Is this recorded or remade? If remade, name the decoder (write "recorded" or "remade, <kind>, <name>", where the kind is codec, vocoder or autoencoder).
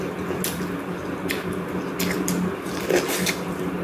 recorded